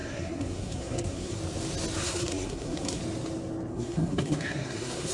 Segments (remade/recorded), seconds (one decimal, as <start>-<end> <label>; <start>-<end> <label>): 0.0-1.4 remade; 1.4-2.0 recorded; 2.0-3.0 remade; 3.0-3.7 recorded; 3.7-5.1 remade